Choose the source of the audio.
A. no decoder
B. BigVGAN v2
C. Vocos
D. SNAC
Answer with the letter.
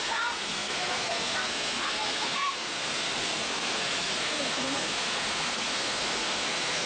D